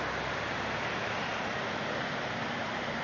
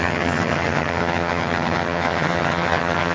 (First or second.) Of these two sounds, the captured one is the first